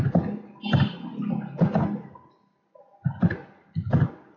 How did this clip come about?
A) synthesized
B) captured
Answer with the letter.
B